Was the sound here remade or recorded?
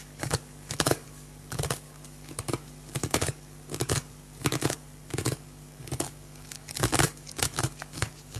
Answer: remade